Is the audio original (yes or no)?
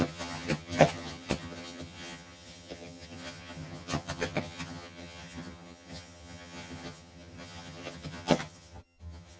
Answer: no